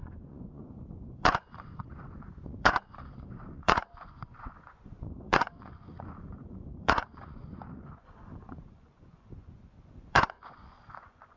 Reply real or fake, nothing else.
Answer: fake